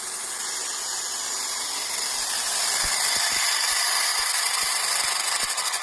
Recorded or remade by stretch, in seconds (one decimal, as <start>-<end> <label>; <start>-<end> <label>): 0.0-5.8 recorded